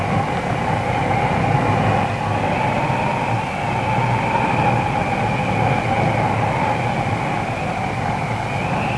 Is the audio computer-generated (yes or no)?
no